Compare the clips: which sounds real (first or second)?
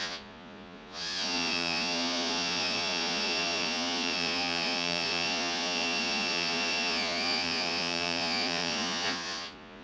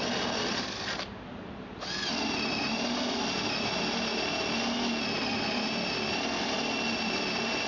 second